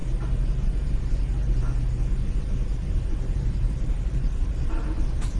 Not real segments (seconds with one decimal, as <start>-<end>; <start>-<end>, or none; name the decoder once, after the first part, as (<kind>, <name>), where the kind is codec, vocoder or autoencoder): 3.2-5.4 (vocoder, BigVGAN v2)